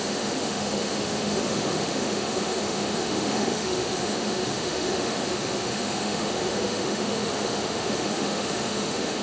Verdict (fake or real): fake